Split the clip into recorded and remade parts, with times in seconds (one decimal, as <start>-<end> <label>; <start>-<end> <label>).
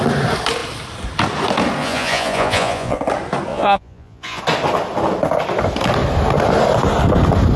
0.0-1.8 recorded; 1.8-3.0 remade; 3.0-3.5 recorded; 3.5-4.4 remade; 4.4-7.6 recorded